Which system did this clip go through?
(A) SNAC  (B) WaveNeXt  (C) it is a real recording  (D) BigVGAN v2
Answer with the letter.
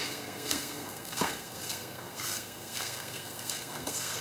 A